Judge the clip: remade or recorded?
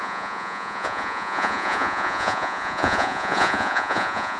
remade